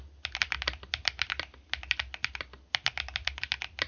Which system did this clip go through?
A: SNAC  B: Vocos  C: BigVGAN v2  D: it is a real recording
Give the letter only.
D